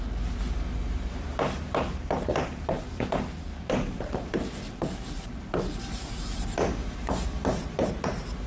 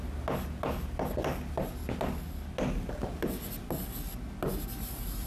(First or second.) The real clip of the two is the second